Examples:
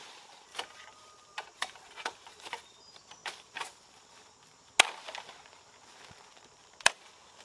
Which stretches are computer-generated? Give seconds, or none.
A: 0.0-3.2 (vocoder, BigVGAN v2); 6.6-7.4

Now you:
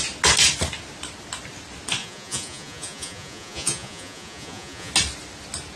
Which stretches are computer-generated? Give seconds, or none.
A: 2.0-4.9 (vocoder, Vocos)